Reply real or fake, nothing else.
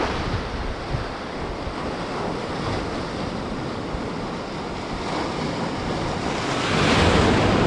real